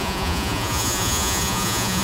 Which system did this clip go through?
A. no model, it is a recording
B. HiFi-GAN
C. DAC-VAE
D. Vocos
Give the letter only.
D